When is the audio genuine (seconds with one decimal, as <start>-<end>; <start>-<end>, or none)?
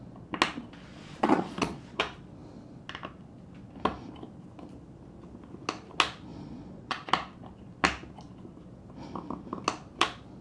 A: 0.0-0.9; 2.0-6.3; 7.1-10.4